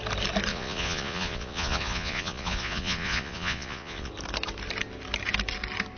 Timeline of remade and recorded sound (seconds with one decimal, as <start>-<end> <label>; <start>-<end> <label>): 0.0-0.5 recorded; 0.5-4.1 remade; 4.1-6.0 recorded